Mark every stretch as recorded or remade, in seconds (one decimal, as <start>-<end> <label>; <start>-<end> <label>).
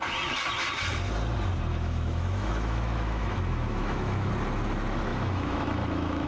0.0-1.7 recorded; 1.7-4.3 remade; 4.3-5.1 recorded; 5.1-6.3 remade